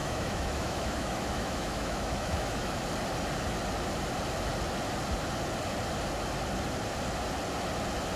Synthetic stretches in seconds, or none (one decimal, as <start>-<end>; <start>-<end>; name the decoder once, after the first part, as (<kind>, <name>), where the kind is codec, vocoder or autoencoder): 0.0-2.8 (autoencoder, DAC-VAE)